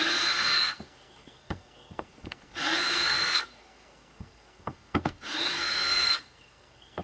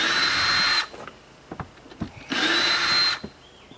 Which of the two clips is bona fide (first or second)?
second